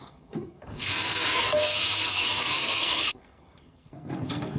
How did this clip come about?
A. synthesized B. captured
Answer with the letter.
A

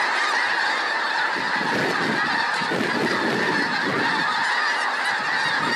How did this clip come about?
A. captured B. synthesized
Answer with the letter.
A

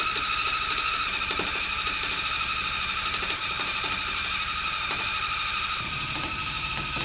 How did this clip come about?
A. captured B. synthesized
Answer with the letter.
B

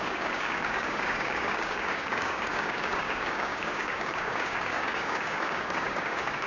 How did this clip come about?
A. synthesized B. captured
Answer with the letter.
A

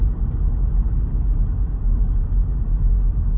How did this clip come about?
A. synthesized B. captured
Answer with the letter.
B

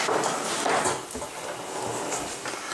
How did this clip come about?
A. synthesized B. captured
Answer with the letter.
B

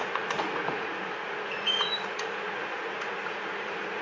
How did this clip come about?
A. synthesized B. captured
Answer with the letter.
A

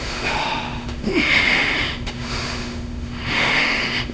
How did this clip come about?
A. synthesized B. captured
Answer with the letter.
A